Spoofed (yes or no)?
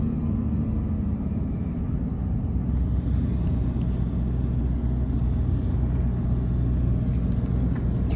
no